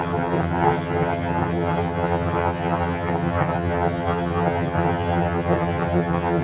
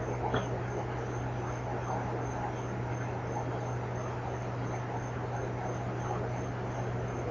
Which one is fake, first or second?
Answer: first